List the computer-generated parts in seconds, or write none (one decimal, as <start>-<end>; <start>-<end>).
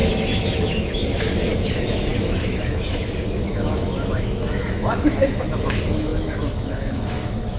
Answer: 0.0-7.6